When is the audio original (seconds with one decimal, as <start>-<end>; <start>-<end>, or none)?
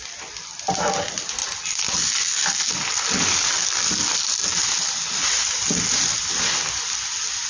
0.0-7.5